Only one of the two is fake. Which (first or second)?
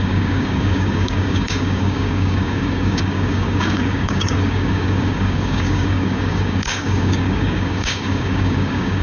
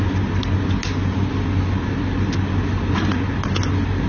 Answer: first